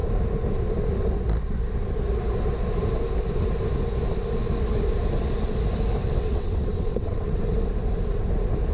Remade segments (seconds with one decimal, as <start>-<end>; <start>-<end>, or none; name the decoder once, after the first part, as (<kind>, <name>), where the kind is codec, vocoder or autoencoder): 6.0-7.4 (vocoder, WaveNeXt)